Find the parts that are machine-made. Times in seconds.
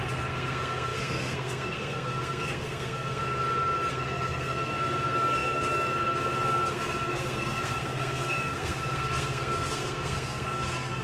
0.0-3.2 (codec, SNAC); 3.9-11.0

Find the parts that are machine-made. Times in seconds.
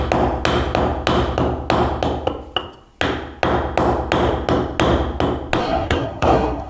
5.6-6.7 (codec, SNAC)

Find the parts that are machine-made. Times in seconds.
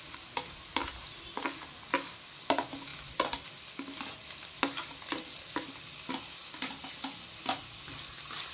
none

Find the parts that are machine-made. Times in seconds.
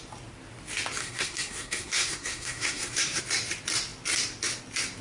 1.0-3.2 (codec, SNAC)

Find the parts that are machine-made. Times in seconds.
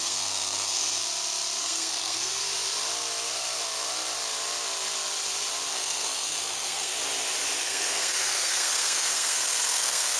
0.0-1.0 (codec, SNAC); 1.6-2.4; 5.7-6.9; 7.6-10.2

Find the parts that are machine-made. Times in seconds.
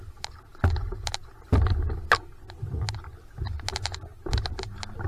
none